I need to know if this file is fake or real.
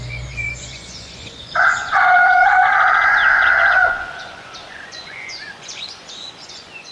fake